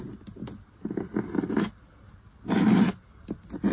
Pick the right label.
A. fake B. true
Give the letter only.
B